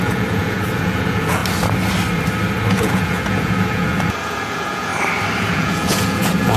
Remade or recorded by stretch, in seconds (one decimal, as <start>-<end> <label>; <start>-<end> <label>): 0.0-1.4 remade; 1.4-2.7 recorded; 2.7-4.9 remade; 4.9-5.4 recorded; 5.4-6.6 remade